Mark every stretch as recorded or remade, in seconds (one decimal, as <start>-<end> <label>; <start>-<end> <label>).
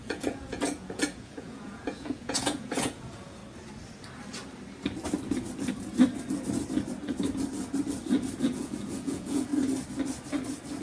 0.0-3.4 remade; 3.4-8.4 recorded; 8.4-9.5 remade; 9.5-10.8 recorded